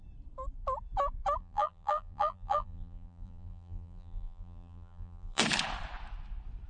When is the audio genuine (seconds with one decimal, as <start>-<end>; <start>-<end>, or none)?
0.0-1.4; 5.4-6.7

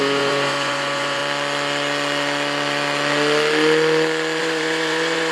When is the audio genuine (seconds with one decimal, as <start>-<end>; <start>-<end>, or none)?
1.2-4.4

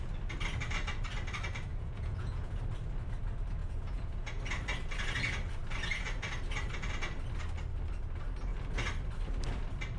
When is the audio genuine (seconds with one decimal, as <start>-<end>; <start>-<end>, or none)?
0.0-1.7; 2.6-3.6; 4.4-10.0